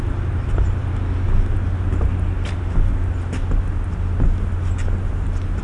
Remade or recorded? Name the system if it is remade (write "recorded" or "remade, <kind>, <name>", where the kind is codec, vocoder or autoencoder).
recorded